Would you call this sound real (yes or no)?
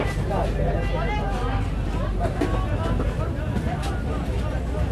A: yes